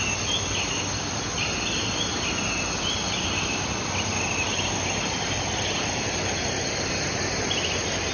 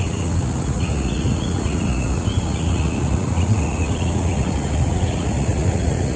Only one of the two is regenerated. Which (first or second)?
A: second